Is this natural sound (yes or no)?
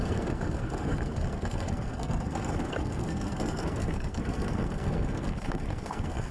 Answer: no